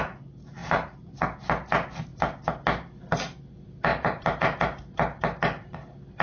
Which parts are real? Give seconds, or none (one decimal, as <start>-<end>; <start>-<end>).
0.0-0.6; 1.2-3.9; 4.6-6.2